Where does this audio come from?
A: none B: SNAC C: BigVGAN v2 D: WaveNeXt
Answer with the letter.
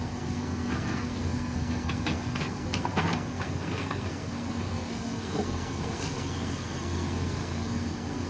B